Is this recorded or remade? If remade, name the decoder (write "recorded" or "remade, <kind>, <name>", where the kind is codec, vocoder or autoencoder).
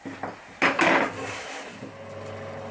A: recorded